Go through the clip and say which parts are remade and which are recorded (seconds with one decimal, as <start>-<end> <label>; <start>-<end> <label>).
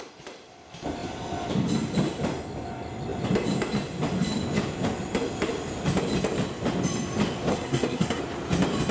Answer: 0.0-7.5 recorded; 7.5-8.2 remade; 8.2-8.9 recorded